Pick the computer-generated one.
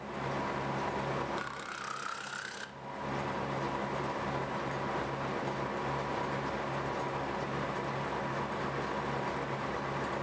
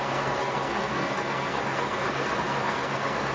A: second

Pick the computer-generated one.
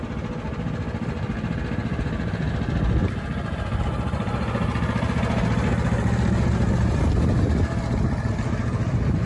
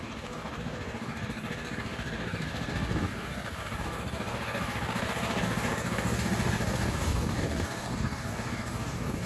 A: second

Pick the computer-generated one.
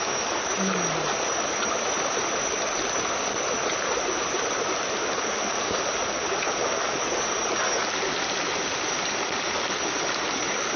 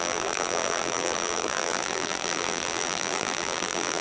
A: second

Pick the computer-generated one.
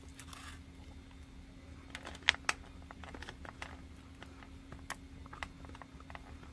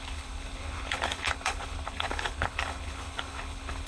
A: second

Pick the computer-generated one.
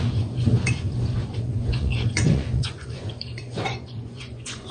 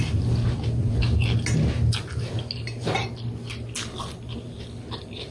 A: first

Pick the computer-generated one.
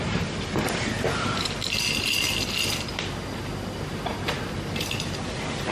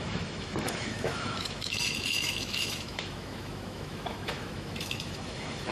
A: second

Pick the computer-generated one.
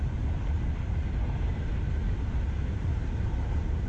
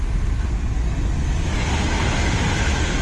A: first